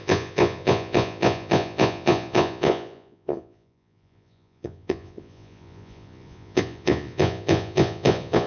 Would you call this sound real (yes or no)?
no